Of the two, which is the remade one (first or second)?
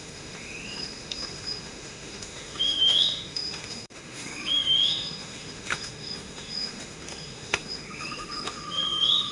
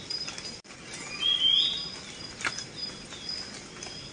first